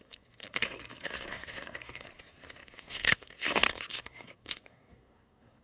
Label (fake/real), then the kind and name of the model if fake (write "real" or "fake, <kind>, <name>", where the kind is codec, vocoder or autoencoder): fake, codec, SNAC